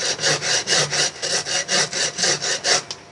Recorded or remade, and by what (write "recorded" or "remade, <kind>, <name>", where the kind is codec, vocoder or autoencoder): recorded